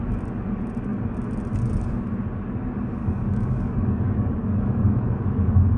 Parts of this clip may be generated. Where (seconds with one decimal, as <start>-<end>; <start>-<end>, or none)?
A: 3.0-5.8